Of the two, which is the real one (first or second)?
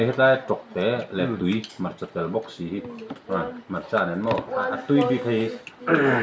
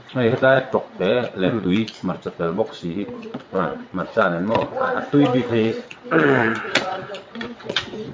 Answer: first